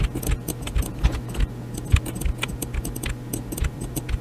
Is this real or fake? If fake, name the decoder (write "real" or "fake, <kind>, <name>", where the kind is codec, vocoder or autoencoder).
real